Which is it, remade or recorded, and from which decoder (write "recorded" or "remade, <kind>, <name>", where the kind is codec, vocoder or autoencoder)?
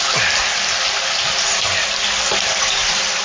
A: recorded